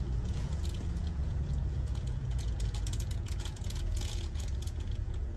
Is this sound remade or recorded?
remade